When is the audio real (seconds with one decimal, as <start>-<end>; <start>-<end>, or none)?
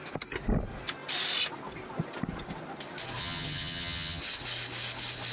0.0-3.2; 4.2-5.3